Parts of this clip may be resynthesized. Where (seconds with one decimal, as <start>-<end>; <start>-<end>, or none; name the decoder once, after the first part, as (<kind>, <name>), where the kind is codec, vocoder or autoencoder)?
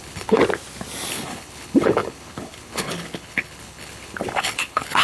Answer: 0.0-0.4 (codec, HILCodec); 1.1-5.0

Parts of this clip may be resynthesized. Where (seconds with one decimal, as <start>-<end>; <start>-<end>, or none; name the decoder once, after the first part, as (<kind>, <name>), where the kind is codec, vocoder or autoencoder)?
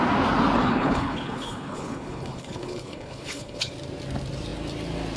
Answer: 0.6-3.7 (codec, HILCodec)